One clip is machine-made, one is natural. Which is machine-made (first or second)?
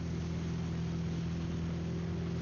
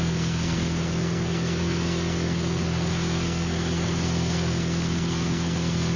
second